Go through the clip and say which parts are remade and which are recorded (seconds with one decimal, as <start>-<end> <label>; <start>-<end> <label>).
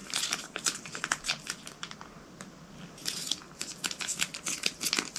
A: 0.0-2.5 remade; 2.5-5.2 recorded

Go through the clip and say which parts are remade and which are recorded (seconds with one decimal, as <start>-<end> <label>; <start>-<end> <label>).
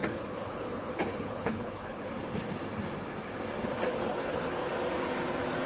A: 0.0-2.1 remade; 2.1-3.9 recorded; 3.9-4.7 remade; 4.7-5.7 recorded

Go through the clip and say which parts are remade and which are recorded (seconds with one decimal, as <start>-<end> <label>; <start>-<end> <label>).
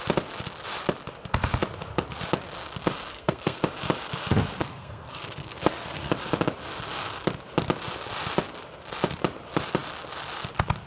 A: 0.0-3.1 recorded; 3.1-3.6 remade; 3.6-4.6 recorded; 4.6-6.1 remade; 6.1-10.9 recorded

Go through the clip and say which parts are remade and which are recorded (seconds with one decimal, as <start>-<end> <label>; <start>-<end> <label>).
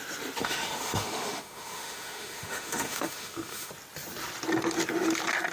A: 0.0-0.4 recorded; 0.4-3.7 remade; 3.7-5.5 recorded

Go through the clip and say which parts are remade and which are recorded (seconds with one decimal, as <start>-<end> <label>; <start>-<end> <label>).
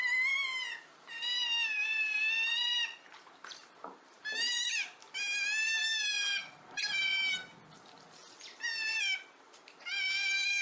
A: 0.0-7.4 remade; 7.4-9.0 recorded; 9.0-10.6 remade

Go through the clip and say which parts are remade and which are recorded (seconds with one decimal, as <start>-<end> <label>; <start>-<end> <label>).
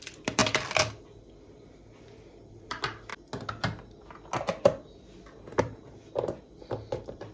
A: 0.0-3.1 remade; 3.1-5.6 recorded; 5.6-7.3 remade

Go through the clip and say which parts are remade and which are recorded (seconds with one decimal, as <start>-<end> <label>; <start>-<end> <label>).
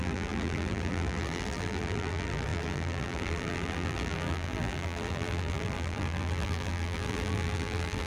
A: 0.0-8.1 remade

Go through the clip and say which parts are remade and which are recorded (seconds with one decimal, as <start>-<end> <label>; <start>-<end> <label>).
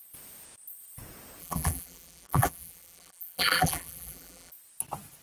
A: 0.0-1.4 recorded; 1.4-4.5 remade; 4.5-5.2 recorded